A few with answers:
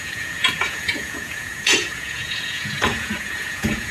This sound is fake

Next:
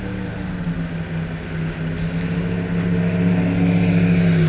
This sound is real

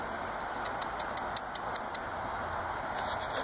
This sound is real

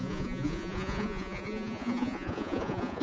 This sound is fake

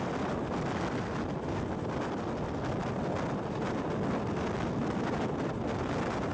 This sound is real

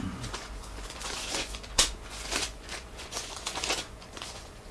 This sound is fake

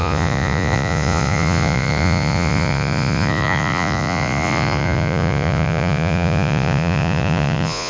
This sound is fake